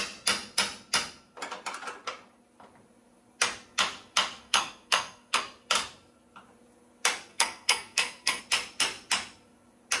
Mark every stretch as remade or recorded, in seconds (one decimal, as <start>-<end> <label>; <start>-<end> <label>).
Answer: 0.0-4.4 recorded; 4.4-5.4 remade; 5.4-7.3 recorded; 7.3-8.4 remade; 8.4-10.0 recorded